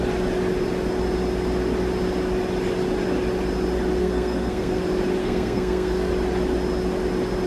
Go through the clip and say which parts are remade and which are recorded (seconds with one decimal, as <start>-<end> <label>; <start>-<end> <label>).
0.0-4.0 recorded; 4.0-4.8 remade; 4.8-5.2 recorded; 5.2-6.1 remade; 6.1-7.5 recorded